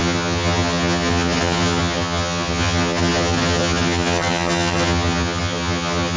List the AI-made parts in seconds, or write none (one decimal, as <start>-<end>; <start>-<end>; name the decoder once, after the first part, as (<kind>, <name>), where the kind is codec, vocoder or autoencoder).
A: 0.0-6.2 (vocoder, HiFi-GAN)